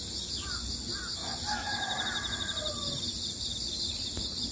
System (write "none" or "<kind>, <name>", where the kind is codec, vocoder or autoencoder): none